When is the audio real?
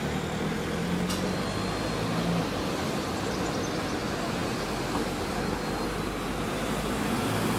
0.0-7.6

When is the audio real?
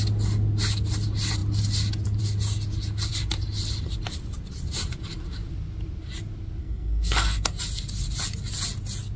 0.0-6.6; 7.5-9.2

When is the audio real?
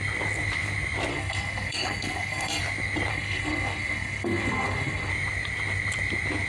0.0-1.1; 2.6-3.1; 5.1-6.5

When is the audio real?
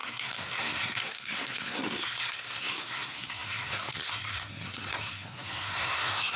none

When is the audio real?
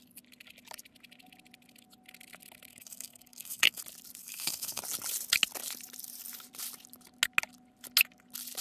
0.0-2.7; 3.8-4.2; 4.8-8.6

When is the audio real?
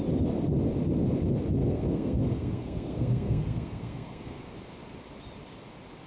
0.0-1.6; 4.4-6.1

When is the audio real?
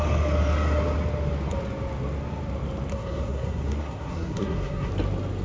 0.0-2.9; 4.9-5.4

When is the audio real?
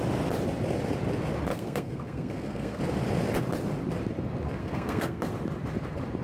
0.0-1.5; 2.8-4.6; 5.3-6.2